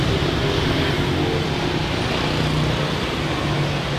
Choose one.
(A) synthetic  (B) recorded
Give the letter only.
B